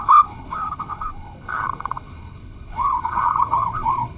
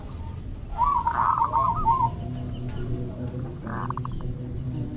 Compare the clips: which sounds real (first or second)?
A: second